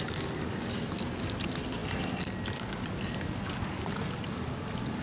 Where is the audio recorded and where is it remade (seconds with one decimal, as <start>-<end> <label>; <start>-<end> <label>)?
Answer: 0.0-5.0 recorded